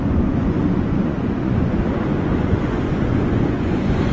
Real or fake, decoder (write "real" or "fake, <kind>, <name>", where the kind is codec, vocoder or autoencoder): fake, vocoder, Vocos